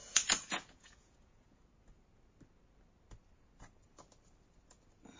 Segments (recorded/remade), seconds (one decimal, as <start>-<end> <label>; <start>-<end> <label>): 0.0-1.6 remade; 1.6-5.2 recorded